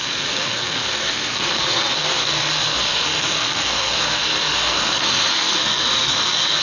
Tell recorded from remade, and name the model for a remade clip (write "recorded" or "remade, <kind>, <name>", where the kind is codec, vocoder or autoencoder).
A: remade, codec, SNAC